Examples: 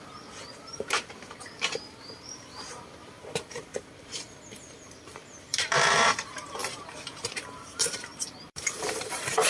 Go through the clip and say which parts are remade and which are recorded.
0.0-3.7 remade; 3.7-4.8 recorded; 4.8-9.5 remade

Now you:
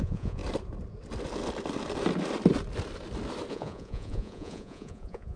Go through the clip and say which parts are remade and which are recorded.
0.0-0.4 remade; 0.4-3.5 recorded; 3.5-5.4 remade

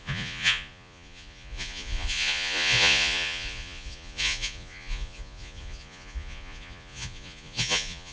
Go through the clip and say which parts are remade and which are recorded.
0.0-8.1 remade

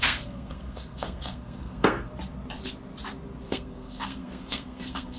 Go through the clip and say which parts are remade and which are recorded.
0.0-2.1 remade; 2.1-3.5 recorded; 3.5-5.2 remade

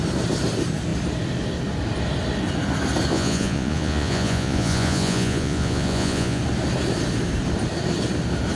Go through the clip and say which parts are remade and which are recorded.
0.0-3.1 recorded; 3.1-6.4 remade; 6.4-8.6 recorded